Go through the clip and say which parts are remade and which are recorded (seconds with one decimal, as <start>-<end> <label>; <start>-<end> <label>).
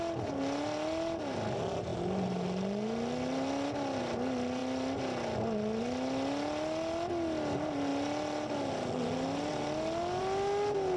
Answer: 0.0-11.0 recorded